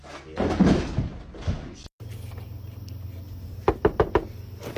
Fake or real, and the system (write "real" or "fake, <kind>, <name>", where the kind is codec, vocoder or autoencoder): real